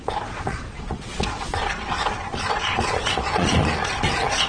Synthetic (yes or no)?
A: yes